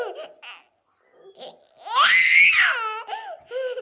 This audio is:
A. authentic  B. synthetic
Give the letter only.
A